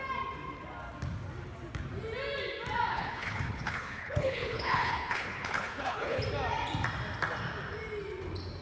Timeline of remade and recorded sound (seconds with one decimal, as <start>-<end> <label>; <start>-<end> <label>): 0.0-2.9 recorded; 2.9-6.2 remade; 6.2-8.6 recorded